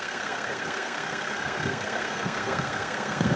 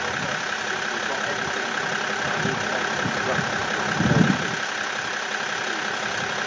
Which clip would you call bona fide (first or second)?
second